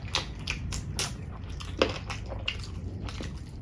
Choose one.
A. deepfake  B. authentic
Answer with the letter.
B